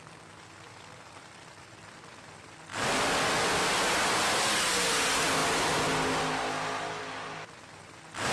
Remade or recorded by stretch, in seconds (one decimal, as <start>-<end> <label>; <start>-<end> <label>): 0.0-8.3 recorded